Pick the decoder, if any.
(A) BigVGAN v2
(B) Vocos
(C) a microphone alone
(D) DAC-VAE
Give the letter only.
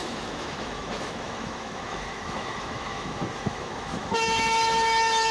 D